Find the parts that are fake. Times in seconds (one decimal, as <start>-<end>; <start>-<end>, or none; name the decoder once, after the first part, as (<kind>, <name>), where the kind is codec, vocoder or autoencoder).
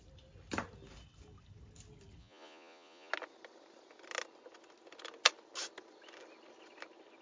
2.2-3.1 (vocoder, Vocos)